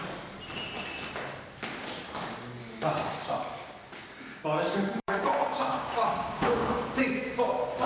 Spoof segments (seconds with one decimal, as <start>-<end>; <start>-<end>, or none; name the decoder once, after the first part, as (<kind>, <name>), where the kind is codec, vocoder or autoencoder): 4.3-7.3 (codec, DAC)